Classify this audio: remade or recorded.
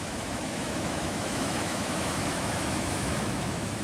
remade